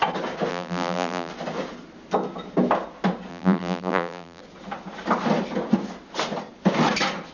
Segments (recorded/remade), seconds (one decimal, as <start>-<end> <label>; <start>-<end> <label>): 0.0-0.5 recorded; 0.5-1.3 remade; 1.3-3.3 recorded; 3.3-4.4 remade; 4.4-7.3 recorded

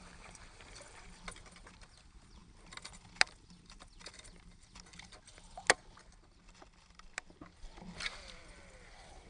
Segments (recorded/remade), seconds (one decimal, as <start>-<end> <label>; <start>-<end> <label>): 0.0-9.3 recorded

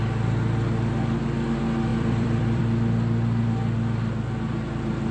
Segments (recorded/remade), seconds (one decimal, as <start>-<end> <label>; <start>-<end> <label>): 0.0-1.9 recorded; 1.9-2.6 remade; 2.6-5.1 recorded

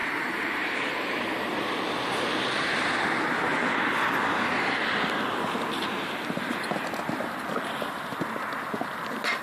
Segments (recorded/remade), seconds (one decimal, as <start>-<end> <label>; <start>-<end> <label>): 0.0-1.2 remade; 1.2-9.4 recorded

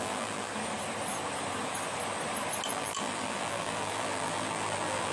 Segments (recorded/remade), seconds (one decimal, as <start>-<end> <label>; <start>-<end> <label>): 0.0-0.5 remade; 0.5-2.7 recorded; 2.7-5.1 remade

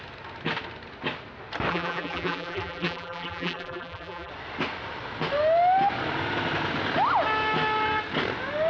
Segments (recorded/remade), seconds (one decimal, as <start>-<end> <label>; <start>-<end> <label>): 0.0-1.7 recorded; 1.7-4.3 remade; 4.3-8.7 recorded